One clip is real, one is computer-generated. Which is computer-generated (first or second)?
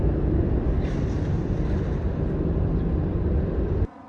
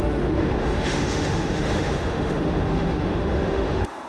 second